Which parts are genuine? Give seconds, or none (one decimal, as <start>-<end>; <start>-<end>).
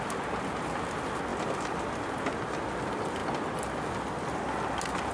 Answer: 0.0-5.1